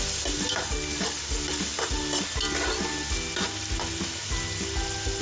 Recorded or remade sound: recorded